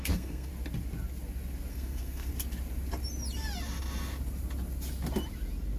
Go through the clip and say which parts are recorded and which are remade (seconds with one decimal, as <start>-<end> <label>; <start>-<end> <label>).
0.0-0.5 remade; 0.5-1.7 recorded; 1.7-2.3 remade; 2.3-5.8 recorded